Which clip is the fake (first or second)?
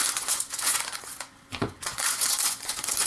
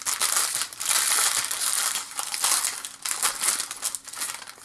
first